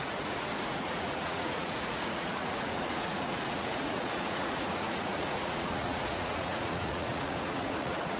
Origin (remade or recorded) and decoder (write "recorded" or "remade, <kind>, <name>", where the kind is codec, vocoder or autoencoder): remade, vocoder, Vocos